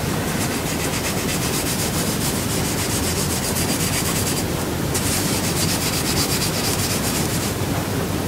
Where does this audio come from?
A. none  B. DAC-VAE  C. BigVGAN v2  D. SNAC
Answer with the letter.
A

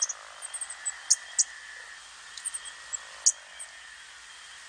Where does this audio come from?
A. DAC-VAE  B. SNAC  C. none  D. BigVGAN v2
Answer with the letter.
C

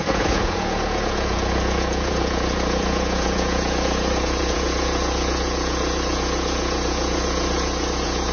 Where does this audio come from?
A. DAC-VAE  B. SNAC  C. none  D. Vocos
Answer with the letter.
D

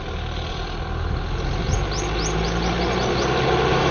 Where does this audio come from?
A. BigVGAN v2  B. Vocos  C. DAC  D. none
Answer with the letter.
D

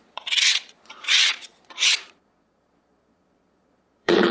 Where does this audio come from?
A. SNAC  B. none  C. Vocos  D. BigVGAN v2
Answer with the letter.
C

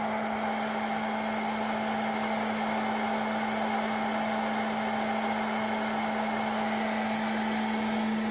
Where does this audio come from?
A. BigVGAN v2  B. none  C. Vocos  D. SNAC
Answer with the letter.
B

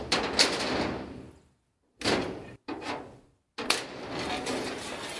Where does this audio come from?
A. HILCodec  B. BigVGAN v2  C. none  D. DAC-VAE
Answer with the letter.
C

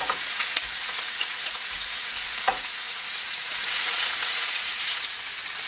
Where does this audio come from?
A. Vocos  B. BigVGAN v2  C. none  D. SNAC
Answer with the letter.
A